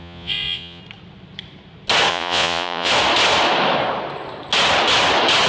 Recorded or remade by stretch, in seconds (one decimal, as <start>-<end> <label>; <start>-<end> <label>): 0.0-0.8 remade; 0.8-2.1 recorded; 2.1-2.9 remade; 2.9-5.5 recorded